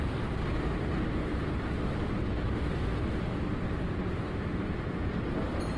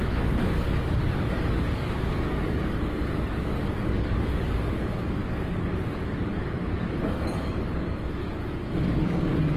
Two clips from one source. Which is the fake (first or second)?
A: second